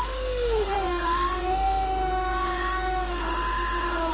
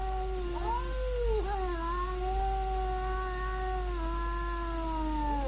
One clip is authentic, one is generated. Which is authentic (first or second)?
second